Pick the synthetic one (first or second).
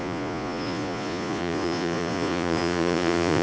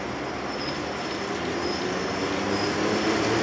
first